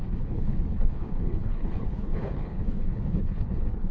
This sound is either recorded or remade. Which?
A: remade